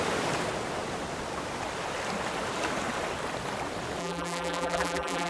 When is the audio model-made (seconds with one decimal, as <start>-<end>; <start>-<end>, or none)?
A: 4.0-5.3